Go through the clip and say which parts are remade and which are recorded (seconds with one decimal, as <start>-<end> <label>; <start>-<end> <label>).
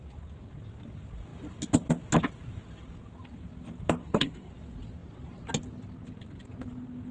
0.0-4.0 recorded; 4.0-4.5 remade; 4.5-7.1 recorded